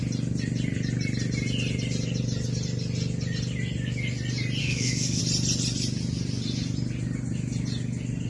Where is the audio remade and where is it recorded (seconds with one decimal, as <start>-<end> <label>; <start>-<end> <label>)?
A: 0.0-4.6 recorded; 4.6-5.2 remade; 5.2-8.3 recorded